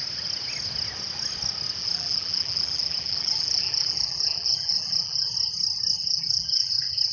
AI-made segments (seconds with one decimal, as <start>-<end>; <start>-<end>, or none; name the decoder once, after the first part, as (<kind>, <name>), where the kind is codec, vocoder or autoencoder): 1.8-5.3 (vocoder, BigVGAN v2); 6.0-7.1